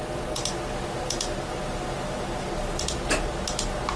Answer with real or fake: real